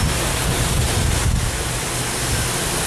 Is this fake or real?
real